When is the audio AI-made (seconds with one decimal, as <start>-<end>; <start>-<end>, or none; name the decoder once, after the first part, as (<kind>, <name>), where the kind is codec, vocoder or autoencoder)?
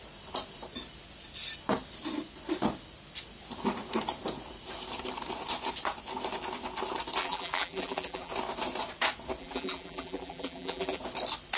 7.2-8.3 (vocoder, BigVGAN v2); 9.4-11.0